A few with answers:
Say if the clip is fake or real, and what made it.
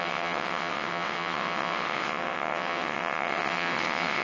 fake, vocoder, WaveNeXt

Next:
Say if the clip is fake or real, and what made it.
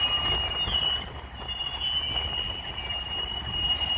real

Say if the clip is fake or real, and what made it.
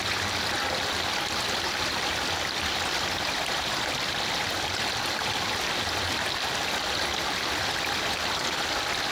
real